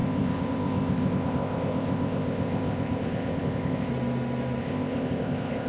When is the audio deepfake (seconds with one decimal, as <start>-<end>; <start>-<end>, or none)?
0.0-3.9; 4.6-5.7